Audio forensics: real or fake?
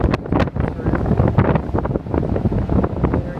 real